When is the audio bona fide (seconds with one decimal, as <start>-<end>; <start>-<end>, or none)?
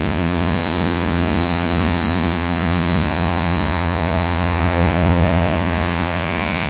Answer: none